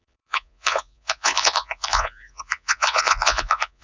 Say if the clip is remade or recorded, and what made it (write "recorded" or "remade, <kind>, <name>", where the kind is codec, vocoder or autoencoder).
remade, vocoder, Vocos